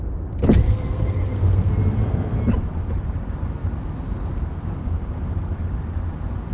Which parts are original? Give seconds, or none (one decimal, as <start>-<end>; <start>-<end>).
0.0-0.6; 1.7-6.5